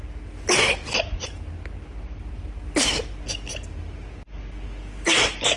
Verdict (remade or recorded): recorded